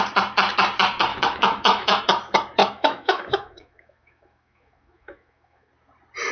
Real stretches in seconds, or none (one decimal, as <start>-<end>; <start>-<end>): 0.0-1.1; 2.0-2.6; 5.7-6.3